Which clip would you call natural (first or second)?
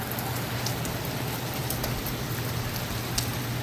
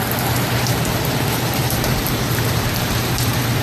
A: first